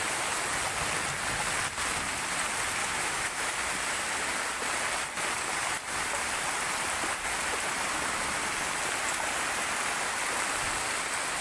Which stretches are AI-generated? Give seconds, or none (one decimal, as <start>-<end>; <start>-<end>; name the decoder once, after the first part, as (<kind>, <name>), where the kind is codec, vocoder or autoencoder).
2.8-3.5 (autoencoder, DAC-VAE)